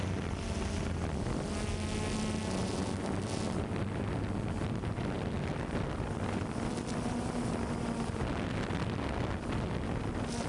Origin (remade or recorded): recorded